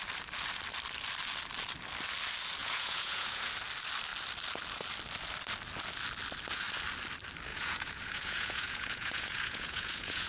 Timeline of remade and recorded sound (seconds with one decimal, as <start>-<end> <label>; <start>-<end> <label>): 0.0-2.6 recorded; 2.6-3.5 remade; 3.5-7.5 recorded; 7.5-10.3 remade